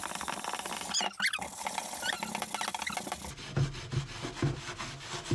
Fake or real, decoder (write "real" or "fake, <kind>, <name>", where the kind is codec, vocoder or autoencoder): real